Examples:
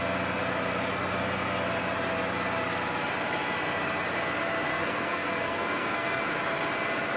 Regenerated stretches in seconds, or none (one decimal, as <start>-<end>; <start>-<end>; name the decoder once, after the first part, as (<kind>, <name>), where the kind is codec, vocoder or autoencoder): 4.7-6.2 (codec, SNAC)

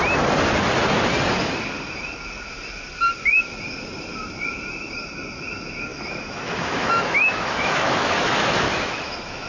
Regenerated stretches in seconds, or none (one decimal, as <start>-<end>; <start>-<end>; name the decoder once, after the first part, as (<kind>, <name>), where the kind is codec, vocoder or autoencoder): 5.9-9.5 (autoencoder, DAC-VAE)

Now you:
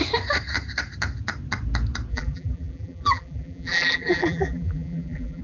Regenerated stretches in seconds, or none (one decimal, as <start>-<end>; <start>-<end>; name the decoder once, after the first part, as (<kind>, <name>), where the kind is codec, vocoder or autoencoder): 2.1-5.4 (vocoder, BigVGAN v2)